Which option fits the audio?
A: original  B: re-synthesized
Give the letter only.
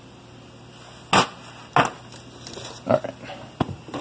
A